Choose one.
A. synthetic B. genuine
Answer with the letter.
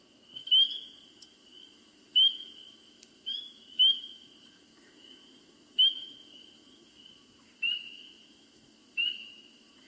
A